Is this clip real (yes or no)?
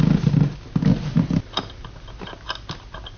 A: yes